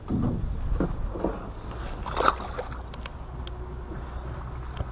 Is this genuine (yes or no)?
yes